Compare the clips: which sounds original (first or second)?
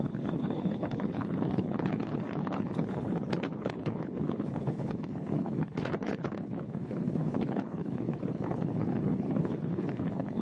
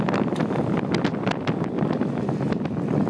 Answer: second